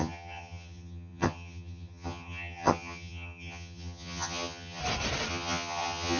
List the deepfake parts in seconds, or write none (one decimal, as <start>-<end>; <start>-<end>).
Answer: 0.0-4.8; 5.3-6.2